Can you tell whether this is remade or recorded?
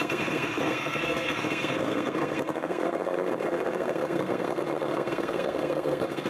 remade